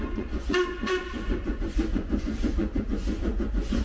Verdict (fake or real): fake